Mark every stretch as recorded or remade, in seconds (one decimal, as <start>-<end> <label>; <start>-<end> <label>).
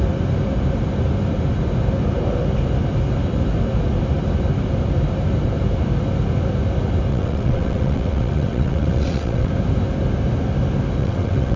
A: 0.0-7.1 recorded; 7.1-9.5 remade; 9.5-11.0 recorded; 11.0-11.6 remade